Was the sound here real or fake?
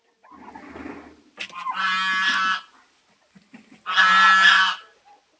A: real